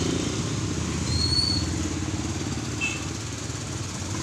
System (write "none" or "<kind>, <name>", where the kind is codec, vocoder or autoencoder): none